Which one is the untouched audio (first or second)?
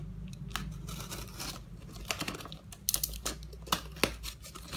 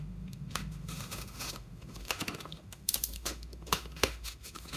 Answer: first